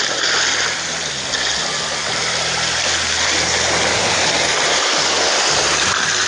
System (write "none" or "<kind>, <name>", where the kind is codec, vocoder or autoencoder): none